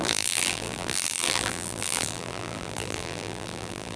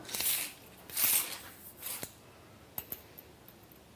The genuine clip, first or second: second